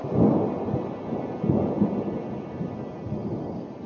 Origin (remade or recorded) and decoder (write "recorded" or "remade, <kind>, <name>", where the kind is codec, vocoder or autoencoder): recorded